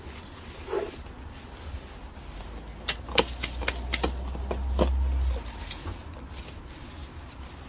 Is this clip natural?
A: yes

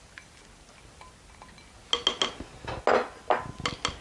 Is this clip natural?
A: yes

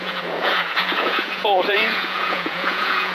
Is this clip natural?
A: no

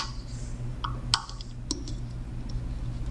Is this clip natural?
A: yes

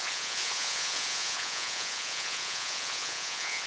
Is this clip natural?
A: no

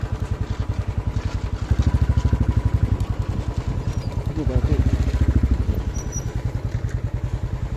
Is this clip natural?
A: yes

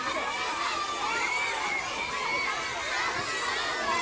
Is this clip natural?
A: yes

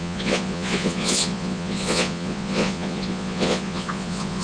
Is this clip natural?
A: no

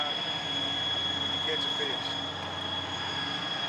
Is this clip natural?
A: yes